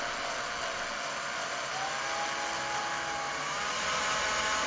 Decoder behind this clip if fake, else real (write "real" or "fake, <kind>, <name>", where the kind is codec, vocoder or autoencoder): real